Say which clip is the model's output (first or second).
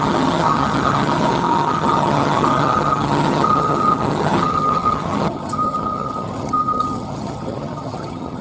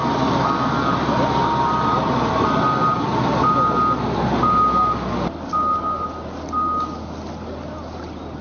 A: first